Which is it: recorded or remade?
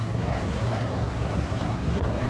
remade